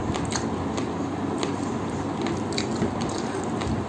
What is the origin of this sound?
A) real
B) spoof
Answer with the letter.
A